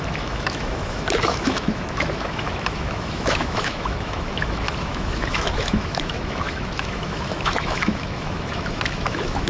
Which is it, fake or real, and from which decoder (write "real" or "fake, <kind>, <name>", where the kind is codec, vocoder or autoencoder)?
fake, autoencoder, DAC-VAE